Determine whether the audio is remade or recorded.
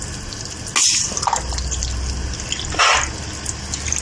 recorded